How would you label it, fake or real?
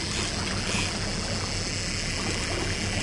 real